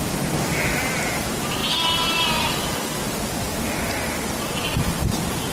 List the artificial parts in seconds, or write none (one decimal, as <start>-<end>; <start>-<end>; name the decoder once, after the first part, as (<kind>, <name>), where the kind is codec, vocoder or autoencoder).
none